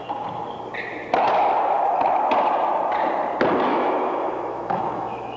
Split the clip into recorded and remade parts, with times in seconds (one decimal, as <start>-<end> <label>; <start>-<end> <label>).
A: 0.0-3.7 recorded; 3.7-5.4 remade